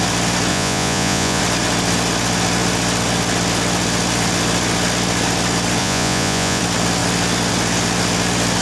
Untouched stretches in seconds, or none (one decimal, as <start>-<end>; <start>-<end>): 0.0-0.5; 1.4-5.8; 6.6-8.6